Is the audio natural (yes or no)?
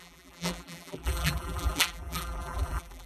no